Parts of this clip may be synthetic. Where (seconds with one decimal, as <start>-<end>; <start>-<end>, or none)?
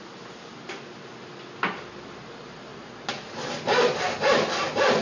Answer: none